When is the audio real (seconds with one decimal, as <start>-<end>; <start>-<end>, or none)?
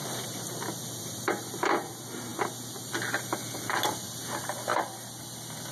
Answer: 1.0-5.7